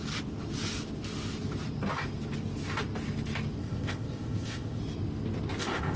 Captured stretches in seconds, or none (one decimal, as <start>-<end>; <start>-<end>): 0.0-3.6; 4.8-5.6